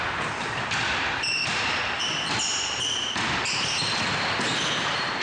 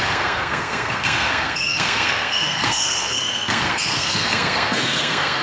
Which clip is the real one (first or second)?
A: first